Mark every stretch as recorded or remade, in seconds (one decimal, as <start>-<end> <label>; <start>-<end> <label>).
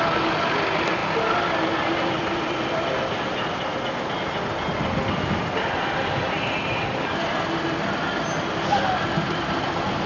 0.0-10.1 recorded